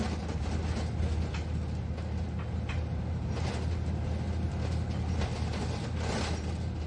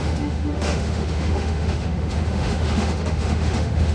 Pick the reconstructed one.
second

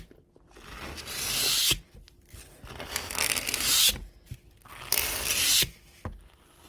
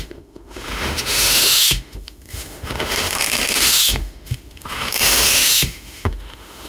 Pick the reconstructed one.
second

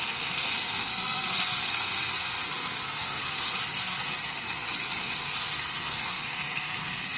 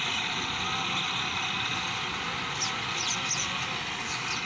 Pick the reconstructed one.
first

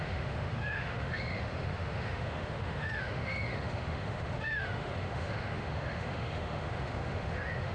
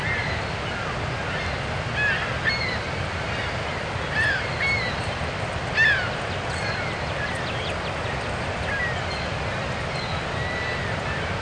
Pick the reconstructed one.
first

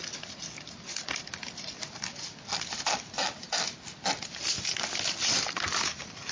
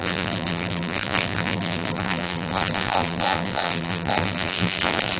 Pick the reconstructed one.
second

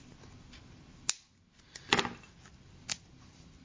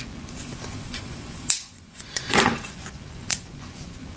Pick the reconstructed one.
second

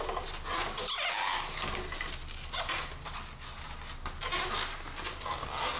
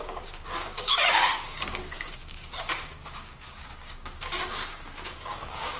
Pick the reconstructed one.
second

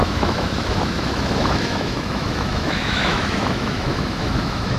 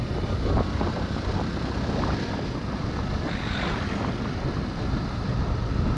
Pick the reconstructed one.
first